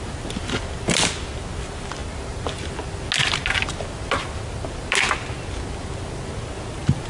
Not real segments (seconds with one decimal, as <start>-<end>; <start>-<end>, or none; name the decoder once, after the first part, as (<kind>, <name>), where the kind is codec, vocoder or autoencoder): none